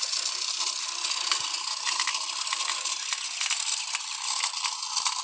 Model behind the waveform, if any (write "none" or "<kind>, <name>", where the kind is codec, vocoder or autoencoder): none